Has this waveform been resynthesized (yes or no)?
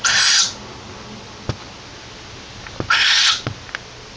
no